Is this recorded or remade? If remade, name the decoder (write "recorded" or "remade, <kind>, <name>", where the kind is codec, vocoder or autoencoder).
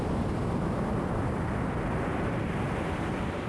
recorded